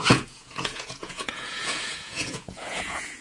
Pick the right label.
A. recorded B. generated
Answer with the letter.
B